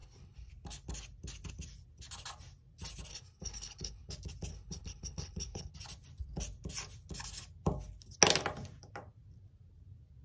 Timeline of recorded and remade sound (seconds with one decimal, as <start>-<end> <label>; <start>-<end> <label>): 0.0-0.5 remade; 0.5-3.1 recorded; 3.1-4.1 remade; 4.1-4.5 recorded; 4.5-5.7 remade; 5.7-10.2 recorded